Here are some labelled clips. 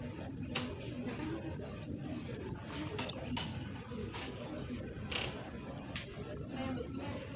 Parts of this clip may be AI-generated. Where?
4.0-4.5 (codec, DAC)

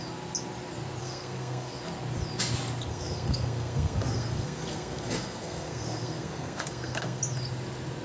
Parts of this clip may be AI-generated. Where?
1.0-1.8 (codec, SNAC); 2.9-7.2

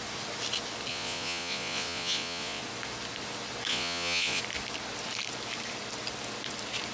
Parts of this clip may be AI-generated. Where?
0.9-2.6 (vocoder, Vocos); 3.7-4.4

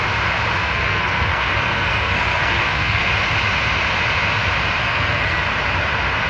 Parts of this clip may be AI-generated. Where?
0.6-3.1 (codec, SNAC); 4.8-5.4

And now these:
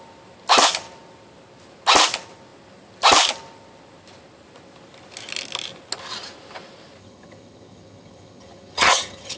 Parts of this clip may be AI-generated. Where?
7.0-9.4 (vocoder, HiFi-GAN)

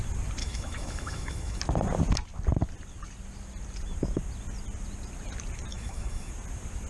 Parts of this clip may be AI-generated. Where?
0.4-1.6 (autoencoder, DAC-VAE); 5.7-6.3

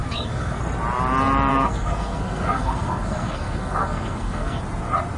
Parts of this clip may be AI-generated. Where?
0.0-0.6 (codec, SNAC); 1.5-4.6